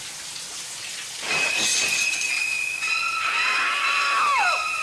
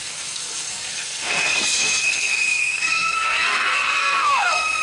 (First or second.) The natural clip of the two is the first